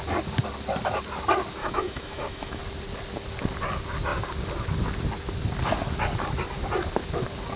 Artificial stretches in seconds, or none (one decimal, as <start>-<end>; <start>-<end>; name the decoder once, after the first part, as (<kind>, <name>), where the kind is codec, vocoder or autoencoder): 1.6-2.6 (autoencoder, DAC-VAE)